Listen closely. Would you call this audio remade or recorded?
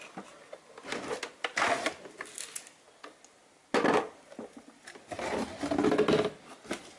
recorded